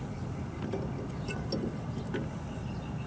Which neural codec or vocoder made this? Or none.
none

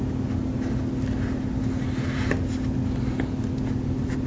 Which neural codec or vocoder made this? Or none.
none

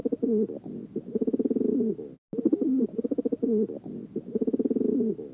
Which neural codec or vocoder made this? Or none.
none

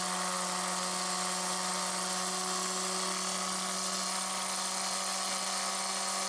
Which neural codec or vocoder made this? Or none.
none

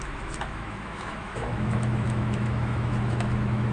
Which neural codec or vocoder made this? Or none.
autoencoder, DAC-VAE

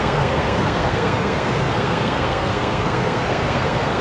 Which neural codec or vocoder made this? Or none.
codec, SNAC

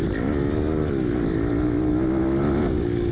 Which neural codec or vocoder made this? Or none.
none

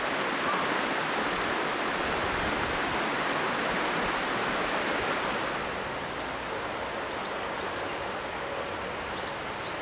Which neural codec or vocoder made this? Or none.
none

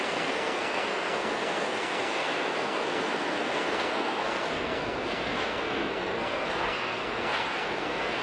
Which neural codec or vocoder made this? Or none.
codec, SNAC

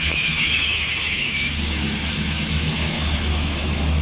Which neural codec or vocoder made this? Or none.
autoencoder, DAC-VAE